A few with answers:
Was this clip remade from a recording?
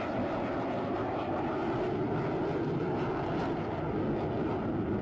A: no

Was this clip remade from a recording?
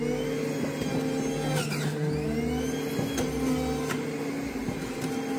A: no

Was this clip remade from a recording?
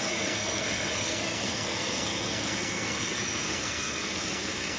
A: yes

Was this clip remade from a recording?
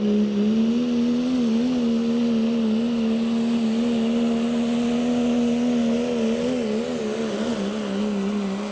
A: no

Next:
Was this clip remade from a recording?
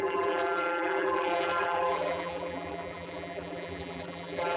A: yes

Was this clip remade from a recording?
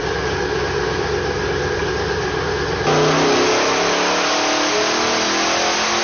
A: no